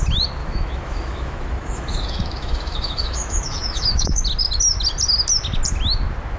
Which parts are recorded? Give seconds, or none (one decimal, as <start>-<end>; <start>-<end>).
0.0-0.4; 4.2-6.4